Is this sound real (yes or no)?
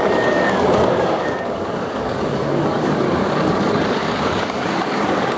no